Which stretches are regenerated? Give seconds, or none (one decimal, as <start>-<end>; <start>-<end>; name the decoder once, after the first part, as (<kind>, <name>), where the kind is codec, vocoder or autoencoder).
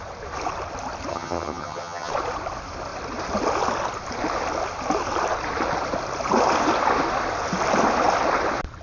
1.1-2.1 (vocoder, HiFi-GAN)